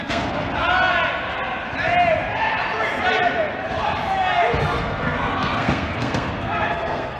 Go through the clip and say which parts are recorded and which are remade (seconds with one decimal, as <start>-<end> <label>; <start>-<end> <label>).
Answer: 0.0-0.5 remade; 0.5-4.8 recorded; 4.8-7.2 remade